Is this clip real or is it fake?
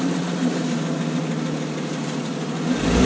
real